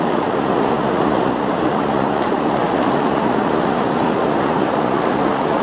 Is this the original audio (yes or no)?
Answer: no